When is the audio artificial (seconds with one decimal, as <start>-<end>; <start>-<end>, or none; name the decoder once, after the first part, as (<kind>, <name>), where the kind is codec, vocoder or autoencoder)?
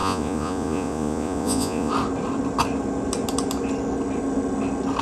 0.0-1.9 (vocoder, Vocos)